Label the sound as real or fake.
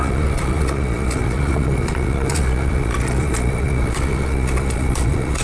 fake